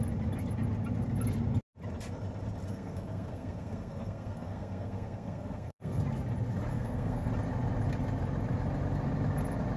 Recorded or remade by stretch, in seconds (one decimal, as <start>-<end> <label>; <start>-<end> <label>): 0.0-2.7 recorded; 2.7-6.0 remade; 6.0-6.7 recorded; 6.7-7.3 remade; 7.3-9.8 recorded